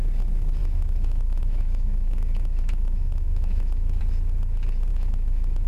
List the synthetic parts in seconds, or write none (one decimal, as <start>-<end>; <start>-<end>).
0.6-4.0; 4.9-5.7